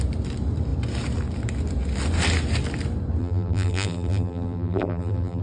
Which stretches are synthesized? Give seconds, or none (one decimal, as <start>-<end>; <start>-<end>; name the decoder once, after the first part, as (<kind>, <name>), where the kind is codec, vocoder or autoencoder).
3.2-5.4 (vocoder, BigVGAN v2)